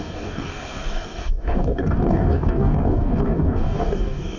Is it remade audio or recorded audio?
remade